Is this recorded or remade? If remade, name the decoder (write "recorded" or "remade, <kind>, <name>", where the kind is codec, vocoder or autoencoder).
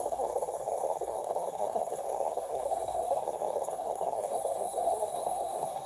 remade, codec, SNAC